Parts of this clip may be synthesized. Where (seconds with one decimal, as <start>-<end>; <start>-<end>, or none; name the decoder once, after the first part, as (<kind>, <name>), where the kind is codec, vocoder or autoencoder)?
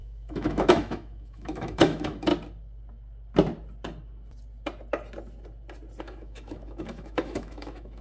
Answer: 0.0-2.3 (autoencoder, DAC-VAE); 6.0-8.0